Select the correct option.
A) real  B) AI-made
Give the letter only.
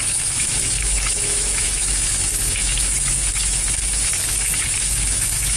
B